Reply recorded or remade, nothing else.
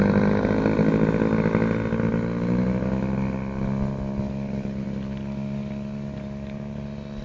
recorded